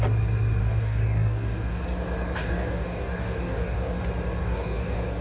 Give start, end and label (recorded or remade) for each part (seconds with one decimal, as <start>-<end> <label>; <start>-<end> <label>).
0.0-0.6 recorded; 0.6-1.8 remade; 1.8-2.4 recorded; 2.4-4.0 remade; 4.0-4.4 recorded; 4.4-5.2 remade